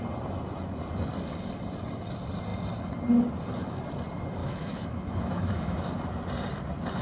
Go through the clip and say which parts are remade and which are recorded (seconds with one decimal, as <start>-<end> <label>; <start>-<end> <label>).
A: 0.0-4.4 recorded; 4.4-5.9 remade; 5.9-7.0 recorded